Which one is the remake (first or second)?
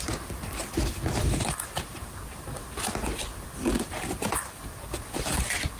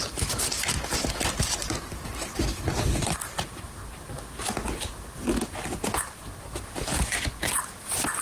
first